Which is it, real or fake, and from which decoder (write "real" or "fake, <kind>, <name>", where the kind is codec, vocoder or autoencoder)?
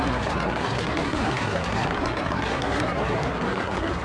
fake, codec, SNAC